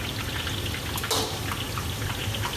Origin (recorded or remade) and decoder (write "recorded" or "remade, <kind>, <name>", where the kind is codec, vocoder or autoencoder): recorded